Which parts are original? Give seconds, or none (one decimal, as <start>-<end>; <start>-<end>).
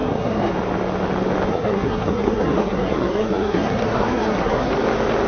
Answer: 0.5-1.5; 4.7-5.3